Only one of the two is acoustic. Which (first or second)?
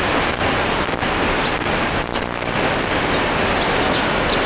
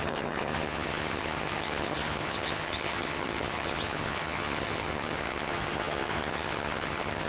first